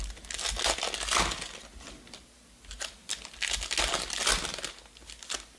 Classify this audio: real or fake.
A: real